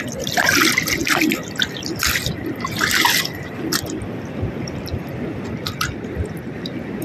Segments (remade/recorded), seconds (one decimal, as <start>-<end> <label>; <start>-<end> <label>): 0.0-1.0 recorded; 1.0-5.0 remade; 5.0-7.0 recorded